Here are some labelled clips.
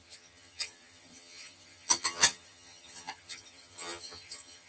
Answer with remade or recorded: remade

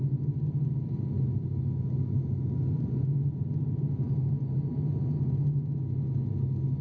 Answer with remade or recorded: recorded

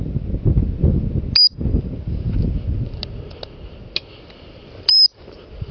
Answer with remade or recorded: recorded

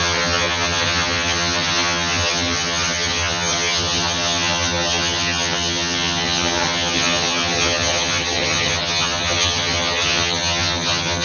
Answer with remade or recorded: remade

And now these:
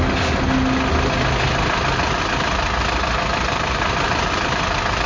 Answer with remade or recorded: recorded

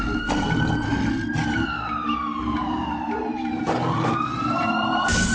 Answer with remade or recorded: recorded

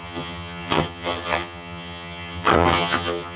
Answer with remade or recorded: remade